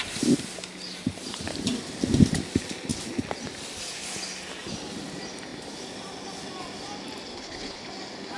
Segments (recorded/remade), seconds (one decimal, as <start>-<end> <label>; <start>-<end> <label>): 0.0-7.3 recorded; 7.3-7.9 remade; 7.9-8.4 recorded